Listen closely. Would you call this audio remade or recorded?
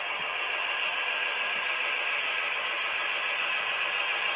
recorded